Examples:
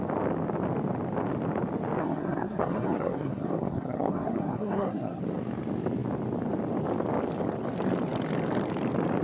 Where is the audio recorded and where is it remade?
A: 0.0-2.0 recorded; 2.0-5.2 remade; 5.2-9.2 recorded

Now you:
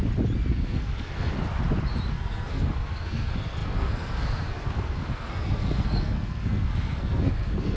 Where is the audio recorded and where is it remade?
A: 0.0-0.5 recorded; 0.5-1.4 remade; 1.4-2.1 recorded; 2.1-7.8 remade

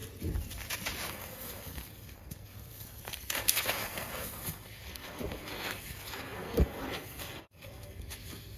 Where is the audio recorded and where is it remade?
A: 0.0-1.1 recorded; 1.1-8.6 remade

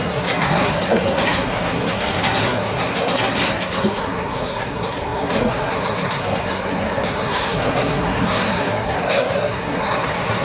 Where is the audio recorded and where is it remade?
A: 0.0-10.4 remade

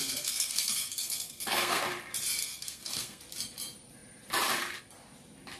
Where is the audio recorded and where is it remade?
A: 0.0-1.8 remade; 1.8-2.4 recorded; 2.4-3.2 remade; 3.2-5.6 recorded